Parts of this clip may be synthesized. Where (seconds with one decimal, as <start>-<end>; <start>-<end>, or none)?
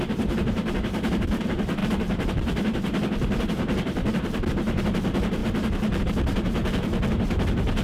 0.0-5.4; 6.0-6.6; 7.1-7.8